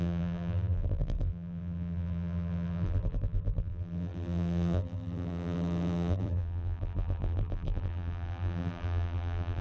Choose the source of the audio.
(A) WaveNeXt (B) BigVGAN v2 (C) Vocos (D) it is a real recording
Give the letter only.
B